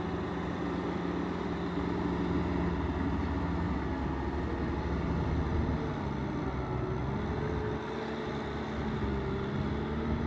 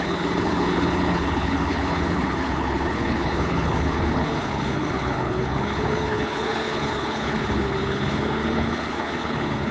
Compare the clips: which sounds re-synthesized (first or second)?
second